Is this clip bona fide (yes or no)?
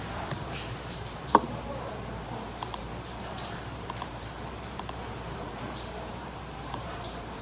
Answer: no